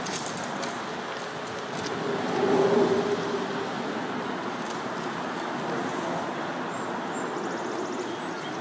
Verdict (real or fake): real